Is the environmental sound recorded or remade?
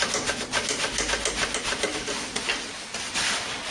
recorded